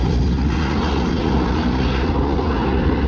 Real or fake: fake